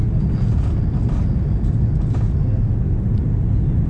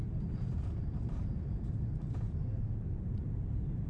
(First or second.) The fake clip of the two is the second